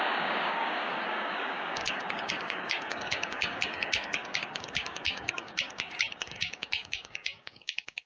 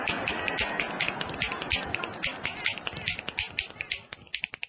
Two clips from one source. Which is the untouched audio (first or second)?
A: second